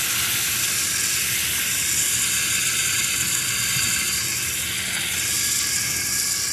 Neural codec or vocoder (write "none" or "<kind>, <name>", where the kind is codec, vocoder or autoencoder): none